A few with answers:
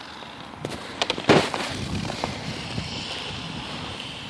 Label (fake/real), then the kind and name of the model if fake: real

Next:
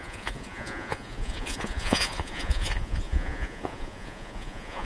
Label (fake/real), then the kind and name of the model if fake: fake, vocoder, Vocos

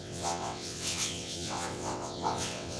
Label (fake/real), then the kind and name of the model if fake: fake, vocoder, WaveNeXt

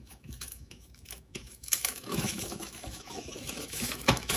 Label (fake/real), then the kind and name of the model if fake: fake, autoencoder, DAC-VAE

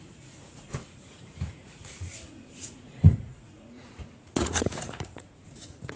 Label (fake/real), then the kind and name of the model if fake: fake, vocoder, Vocos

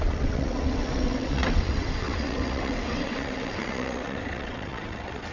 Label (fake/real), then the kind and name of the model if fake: fake, vocoder, WaveNeXt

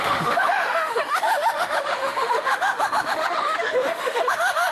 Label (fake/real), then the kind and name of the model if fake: fake, autoencoder, DAC-VAE